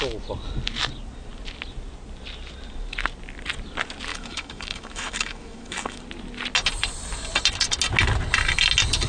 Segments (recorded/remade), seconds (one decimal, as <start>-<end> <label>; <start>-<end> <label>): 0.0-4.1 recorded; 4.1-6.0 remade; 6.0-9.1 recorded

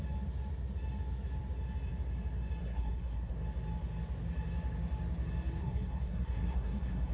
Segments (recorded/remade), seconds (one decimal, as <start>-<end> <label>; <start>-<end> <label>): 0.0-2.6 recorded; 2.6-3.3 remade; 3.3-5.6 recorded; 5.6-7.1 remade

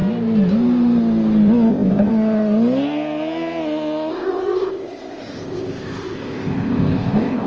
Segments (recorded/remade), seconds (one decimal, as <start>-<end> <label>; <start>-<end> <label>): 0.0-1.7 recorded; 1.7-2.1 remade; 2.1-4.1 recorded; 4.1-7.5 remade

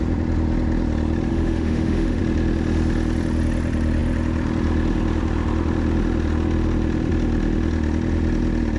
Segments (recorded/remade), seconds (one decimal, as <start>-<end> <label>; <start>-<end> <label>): 0.0-1.3 recorded; 1.3-2.2 remade; 2.2-8.8 recorded

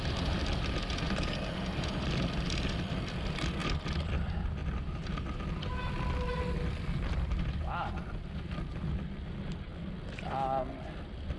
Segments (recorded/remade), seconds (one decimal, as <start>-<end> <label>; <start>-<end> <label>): 0.0-11.4 recorded

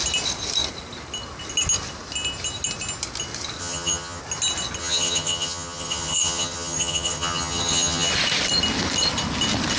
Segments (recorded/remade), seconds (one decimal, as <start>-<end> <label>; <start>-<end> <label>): 0.0-3.6 recorded; 3.6-4.2 remade; 4.2-4.8 recorded; 4.8-8.1 remade; 8.1-9.8 recorded

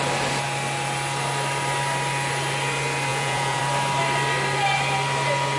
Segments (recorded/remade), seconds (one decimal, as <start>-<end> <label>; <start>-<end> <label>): 0.0-3.1 recorded; 3.1-3.6 remade; 3.6-5.6 recorded